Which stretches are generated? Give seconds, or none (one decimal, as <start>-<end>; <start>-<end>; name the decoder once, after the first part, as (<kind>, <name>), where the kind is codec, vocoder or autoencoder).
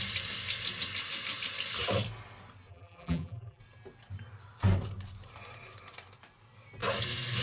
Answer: 2.7-3.6 (vocoder, BigVGAN v2)